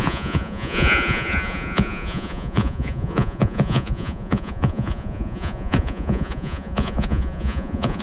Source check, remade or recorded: remade